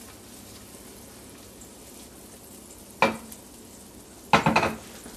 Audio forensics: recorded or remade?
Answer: recorded